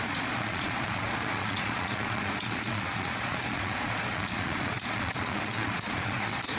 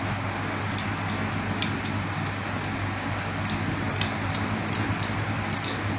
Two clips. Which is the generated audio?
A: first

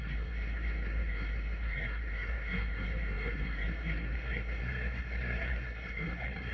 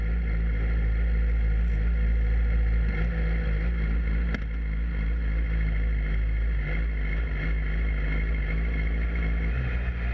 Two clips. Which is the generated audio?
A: first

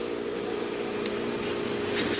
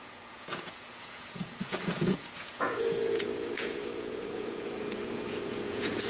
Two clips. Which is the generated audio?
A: second